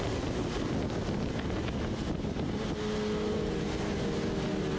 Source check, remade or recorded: recorded